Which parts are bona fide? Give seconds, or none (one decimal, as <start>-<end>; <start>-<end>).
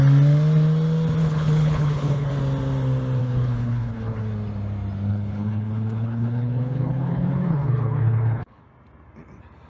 0.0-1.2; 2.3-3.2; 4.2-5.1; 8.6-9.7